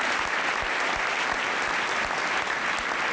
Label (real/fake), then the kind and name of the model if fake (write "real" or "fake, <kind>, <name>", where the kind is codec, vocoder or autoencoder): real